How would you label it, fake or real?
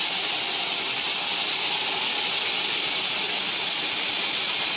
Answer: real